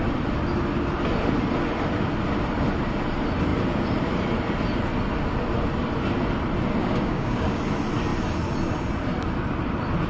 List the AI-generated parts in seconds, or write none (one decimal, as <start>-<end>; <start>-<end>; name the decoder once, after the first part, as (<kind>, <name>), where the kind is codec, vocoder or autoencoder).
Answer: 6.8-7.6 (codec, DAC)